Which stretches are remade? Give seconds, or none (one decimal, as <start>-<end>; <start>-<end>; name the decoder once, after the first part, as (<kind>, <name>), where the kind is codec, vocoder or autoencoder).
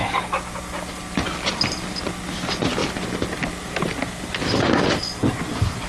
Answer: none